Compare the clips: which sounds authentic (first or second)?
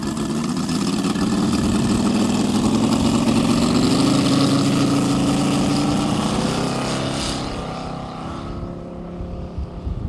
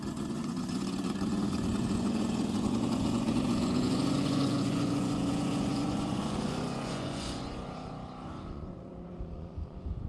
first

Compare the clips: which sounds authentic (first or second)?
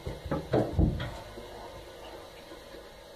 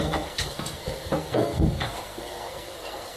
first